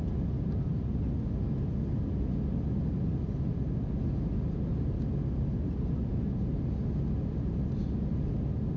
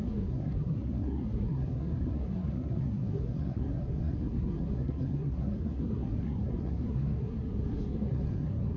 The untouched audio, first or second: first